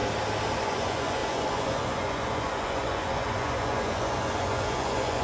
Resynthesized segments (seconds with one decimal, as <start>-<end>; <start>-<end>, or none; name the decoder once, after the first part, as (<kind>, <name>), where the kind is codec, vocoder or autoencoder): 0.6-5.2 (vocoder, Vocos)